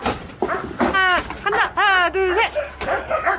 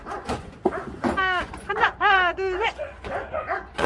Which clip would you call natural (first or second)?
first